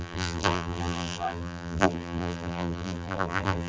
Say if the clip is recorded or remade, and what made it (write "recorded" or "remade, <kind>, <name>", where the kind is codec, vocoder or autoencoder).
remade, vocoder, BigVGAN v2